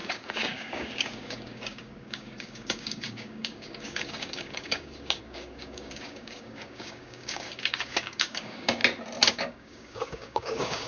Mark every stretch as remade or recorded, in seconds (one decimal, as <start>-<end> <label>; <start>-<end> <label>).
0.0-8.8 remade; 8.8-9.3 recorded; 9.3-10.9 remade